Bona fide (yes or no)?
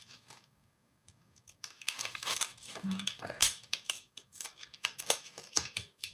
no